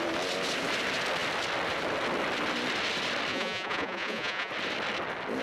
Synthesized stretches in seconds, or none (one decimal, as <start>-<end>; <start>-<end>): 3.3-4.5